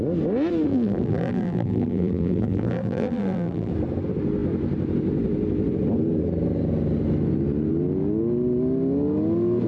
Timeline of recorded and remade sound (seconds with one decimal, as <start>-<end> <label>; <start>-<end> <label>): 0.0-0.7 recorded; 0.7-3.7 remade; 3.7-9.7 recorded